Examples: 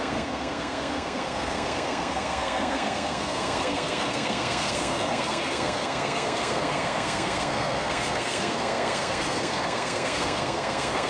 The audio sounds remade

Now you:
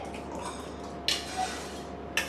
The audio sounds recorded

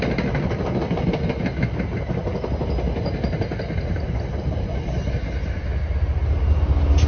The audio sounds recorded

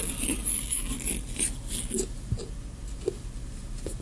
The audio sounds recorded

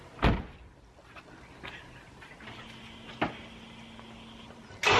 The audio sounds recorded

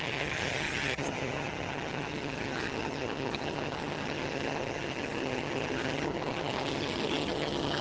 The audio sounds remade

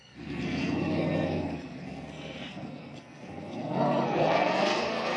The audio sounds remade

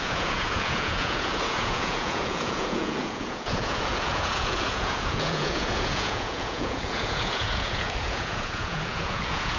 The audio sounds remade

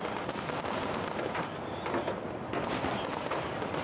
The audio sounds recorded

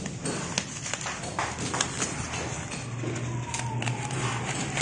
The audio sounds recorded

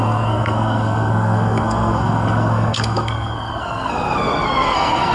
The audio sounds remade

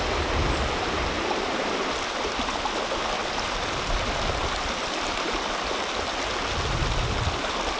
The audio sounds recorded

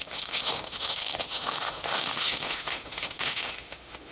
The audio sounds remade